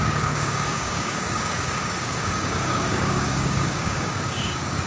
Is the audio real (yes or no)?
no